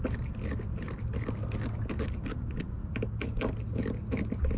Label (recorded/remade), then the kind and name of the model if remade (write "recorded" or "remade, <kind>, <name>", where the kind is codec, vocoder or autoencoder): recorded